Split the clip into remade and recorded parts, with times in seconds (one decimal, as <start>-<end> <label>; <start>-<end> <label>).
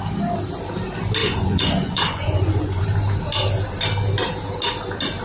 0.0-1.2 recorded; 1.2-2.8 remade; 2.8-5.2 recorded